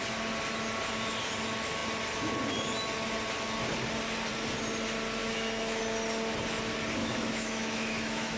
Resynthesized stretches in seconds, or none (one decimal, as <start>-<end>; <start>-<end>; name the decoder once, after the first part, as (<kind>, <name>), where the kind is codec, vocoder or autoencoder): 5.2-5.8 (autoencoder, DAC-VAE); 7.0-8.4